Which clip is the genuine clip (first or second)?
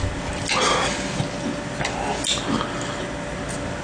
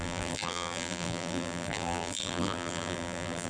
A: first